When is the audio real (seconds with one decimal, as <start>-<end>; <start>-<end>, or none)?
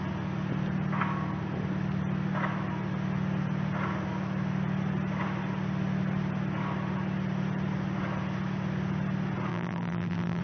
0.0-9.5